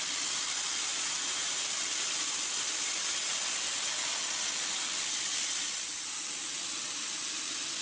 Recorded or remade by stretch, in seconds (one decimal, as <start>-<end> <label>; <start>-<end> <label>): 0.0-0.9 recorded; 0.9-1.7 remade; 1.7-7.8 recorded